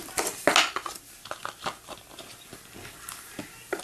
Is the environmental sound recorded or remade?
recorded